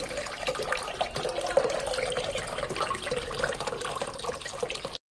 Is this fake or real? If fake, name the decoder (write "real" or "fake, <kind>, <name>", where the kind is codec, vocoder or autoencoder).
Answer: real